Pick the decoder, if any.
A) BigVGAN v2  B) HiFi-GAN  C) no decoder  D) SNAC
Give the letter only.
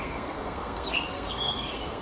D